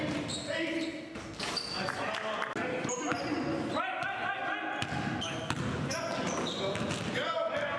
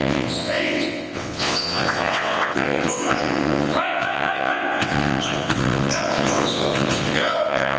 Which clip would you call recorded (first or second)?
first